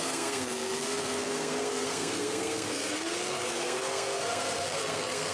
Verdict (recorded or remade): remade